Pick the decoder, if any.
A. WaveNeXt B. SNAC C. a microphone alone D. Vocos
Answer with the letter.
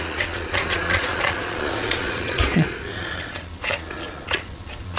D